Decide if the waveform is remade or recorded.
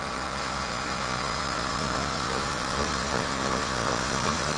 remade